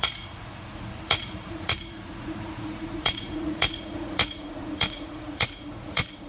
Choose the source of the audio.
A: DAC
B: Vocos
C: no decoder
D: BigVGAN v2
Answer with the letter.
B